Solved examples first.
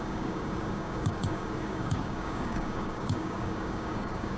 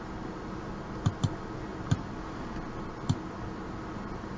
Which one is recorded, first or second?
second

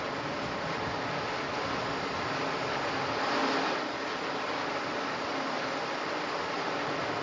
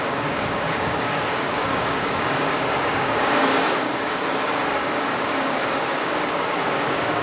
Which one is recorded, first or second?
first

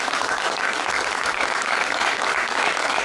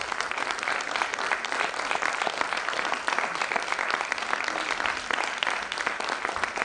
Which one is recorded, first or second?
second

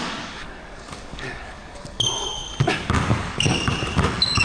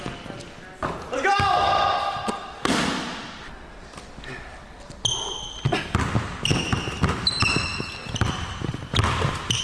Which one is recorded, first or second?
second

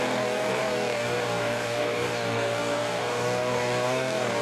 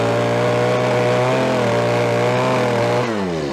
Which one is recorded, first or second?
second